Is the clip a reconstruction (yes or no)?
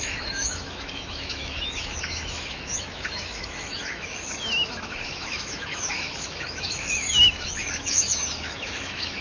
yes